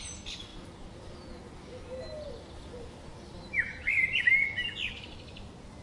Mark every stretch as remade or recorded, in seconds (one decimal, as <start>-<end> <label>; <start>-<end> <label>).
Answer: 0.0-0.5 recorded; 0.5-1.2 remade; 1.2-3.1 recorded; 3.1-4.2 remade; 4.2-5.8 recorded